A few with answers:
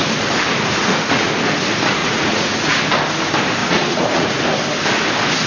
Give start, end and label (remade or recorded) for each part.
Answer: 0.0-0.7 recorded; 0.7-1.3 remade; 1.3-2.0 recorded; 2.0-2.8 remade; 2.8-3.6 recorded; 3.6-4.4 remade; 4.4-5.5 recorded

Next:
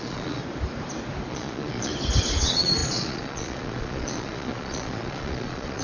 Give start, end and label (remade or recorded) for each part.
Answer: 0.0-0.4 remade; 0.4-1.3 recorded; 1.3-1.9 remade; 1.9-2.4 recorded; 2.4-5.8 remade